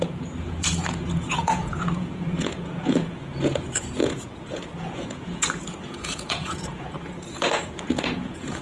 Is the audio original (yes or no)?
no